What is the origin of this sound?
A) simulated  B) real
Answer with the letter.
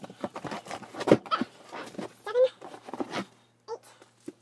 B